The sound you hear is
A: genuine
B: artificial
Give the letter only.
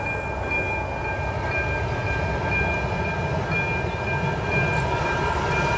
A